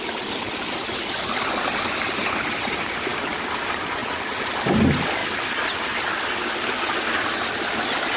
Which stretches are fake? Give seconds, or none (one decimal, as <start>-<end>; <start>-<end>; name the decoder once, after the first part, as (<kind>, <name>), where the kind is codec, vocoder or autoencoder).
0.0-5.2 (vocoder, BigVGAN v2)

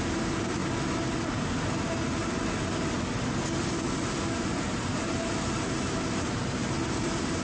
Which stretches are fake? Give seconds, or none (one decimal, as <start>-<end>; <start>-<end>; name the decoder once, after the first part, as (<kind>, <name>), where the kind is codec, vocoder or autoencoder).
0.0-0.6 (vocoder, BigVGAN v2); 4.3-7.4

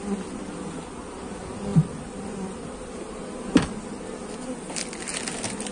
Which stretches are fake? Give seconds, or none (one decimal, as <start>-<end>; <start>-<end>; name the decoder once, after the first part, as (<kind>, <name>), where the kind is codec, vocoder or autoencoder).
1.7-4.0 (vocoder, BigVGAN v2)

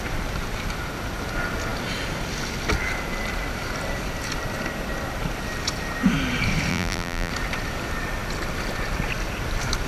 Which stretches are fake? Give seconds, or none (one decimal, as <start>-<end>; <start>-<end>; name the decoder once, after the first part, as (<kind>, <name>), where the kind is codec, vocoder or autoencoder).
6.7-7.3 (vocoder, BigVGAN v2)